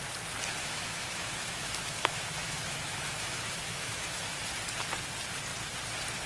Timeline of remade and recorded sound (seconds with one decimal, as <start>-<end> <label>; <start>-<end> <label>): 0.0-0.6 recorded; 0.6-4.4 remade; 4.4-6.3 recorded

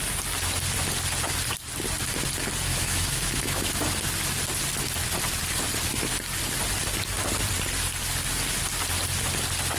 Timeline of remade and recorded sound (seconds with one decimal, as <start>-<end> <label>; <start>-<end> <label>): 0.0-2.7 recorded; 2.7-3.8 remade; 3.8-9.8 recorded

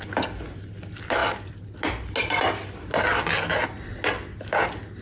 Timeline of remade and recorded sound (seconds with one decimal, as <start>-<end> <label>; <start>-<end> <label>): 0.0-5.0 recorded